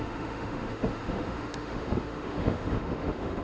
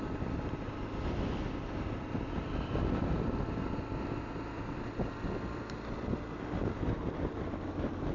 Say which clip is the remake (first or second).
first